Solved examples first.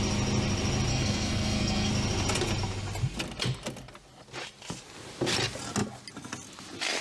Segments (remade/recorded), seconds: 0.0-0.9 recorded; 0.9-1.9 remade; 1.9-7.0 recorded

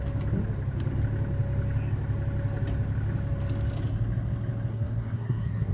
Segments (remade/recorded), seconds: 0.0-4.7 recorded; 4.7-5.7 remade

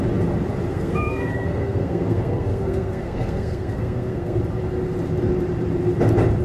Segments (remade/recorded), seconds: 0.0-0.7 recorded; 0.7-4.4 remade; 4.4-6.4 recorded

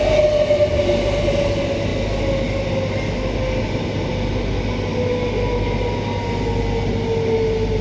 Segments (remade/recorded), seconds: 0.0-7.8 recorded

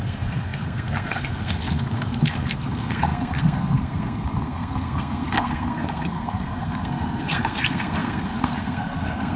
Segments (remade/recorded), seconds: 0.0-9.4 remade